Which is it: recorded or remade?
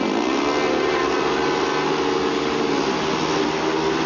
recorded